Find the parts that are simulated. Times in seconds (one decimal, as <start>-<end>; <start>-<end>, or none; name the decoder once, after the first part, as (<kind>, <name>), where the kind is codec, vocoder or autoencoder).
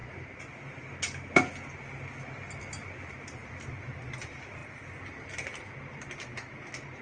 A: none